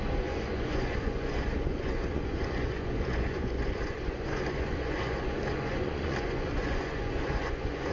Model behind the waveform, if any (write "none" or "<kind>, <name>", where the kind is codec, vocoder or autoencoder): vocoder, Vocos